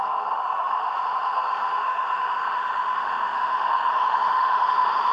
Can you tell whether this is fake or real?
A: fake